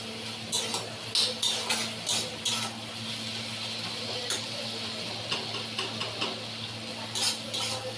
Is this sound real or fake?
real